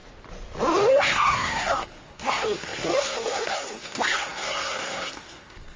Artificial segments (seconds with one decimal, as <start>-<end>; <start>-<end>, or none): 0.9-5.8